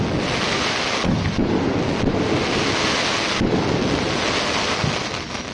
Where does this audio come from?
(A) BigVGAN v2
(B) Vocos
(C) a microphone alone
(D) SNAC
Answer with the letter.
C